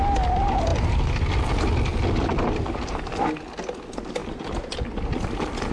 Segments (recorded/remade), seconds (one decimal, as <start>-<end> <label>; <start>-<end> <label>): 0.0-1.9 recorded; 1.9-2.4 remade; 2.4-4.2 recorded; 4.2-5.3 remade; 5.3-5.7 recorded